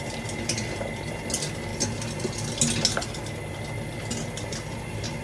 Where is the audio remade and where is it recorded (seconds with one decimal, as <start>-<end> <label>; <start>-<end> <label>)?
0.0-5.2 recorded